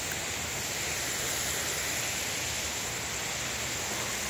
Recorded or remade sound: recorded